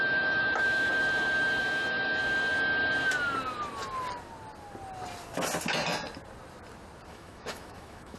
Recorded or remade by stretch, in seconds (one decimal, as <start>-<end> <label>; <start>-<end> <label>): 0.0-0.9 remade; 0.9-1.6 recorded; 1.6-2.2 remade; 2.2-7.1 recorded; 7.1-8.2 remade